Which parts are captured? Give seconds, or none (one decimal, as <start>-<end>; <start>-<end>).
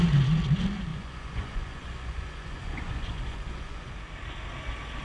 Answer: 0.0-0.9; 3.9-5.0